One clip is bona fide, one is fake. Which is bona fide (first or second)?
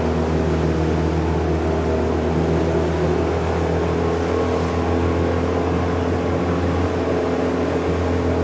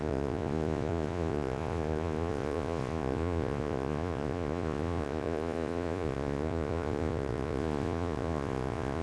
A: first